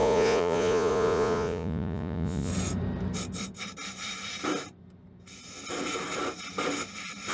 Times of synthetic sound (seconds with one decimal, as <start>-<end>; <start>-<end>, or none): 0.0-2.5